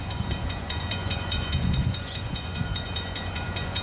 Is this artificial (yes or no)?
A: yes